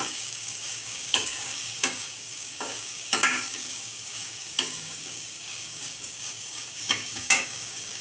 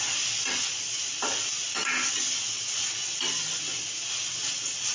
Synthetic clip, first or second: first